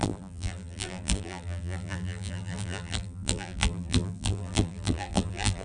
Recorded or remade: remade